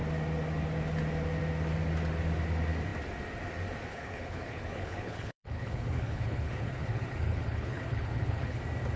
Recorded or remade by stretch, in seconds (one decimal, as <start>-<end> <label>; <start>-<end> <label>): 0.0-3.9 recorded; 3.9-8.6 remade; 8.6-9.0 recorded